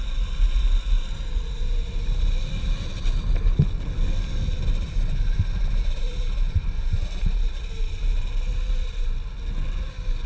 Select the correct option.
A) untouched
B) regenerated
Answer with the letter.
A